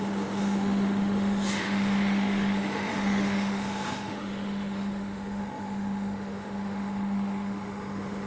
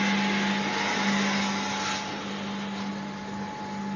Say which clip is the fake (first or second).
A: first